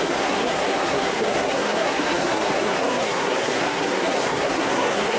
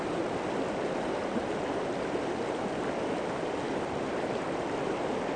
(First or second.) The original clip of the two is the second